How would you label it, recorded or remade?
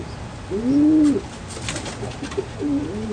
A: recorded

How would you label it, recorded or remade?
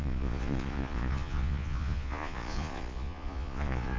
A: remade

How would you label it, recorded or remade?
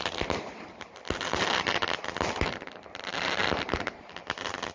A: recorded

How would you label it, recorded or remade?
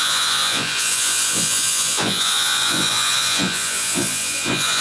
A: remade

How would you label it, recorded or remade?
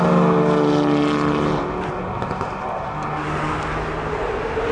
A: recorded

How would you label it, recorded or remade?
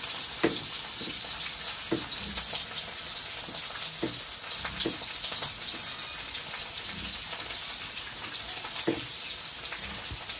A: recorded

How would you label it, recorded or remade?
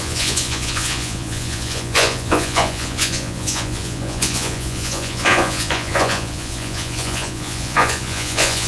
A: remade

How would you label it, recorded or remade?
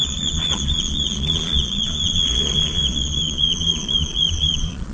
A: remade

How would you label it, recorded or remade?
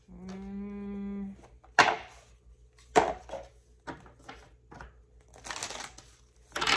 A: recorded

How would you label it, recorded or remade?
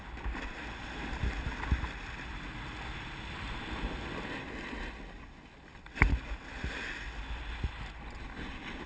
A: recorded